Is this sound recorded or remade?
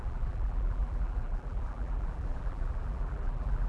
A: remade